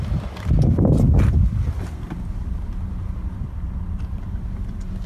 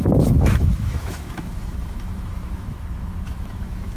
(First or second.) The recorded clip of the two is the first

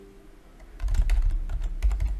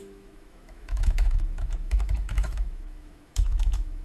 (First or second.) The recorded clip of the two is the first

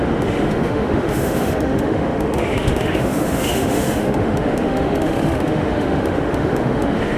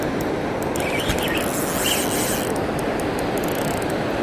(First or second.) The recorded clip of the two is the second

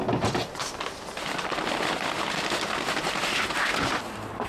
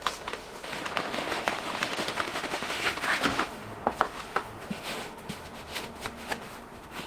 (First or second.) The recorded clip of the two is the first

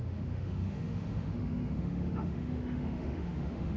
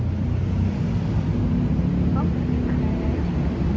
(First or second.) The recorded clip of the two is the second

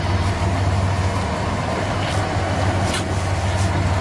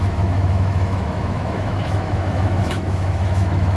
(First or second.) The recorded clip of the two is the first